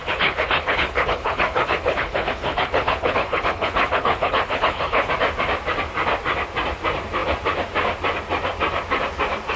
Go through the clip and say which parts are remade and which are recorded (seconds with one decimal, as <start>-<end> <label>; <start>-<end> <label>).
0.0-5.1 remade; 5.1-9.6 recorded